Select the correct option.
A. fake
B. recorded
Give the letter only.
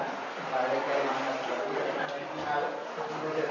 B